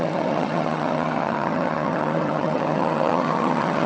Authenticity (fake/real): fake